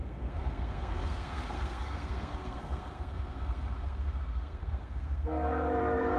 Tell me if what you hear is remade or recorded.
remade